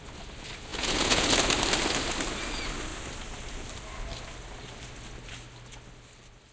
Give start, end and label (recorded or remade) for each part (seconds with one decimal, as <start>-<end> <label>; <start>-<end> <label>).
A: 0.0-0.7 recorded; 0.7-1.3 remade; 1.3-6.5 recorded